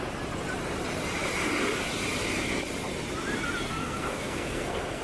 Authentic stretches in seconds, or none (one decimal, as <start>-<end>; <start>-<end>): 0.0-3.8